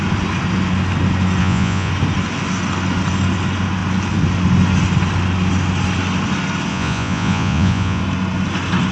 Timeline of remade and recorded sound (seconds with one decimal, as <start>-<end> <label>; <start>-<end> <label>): 0.0-1.4 recorded; 1.4-1.9 remade; 1.9-6.7 recorded; 6.7-8.0 remade; 8.0-8.9 recorded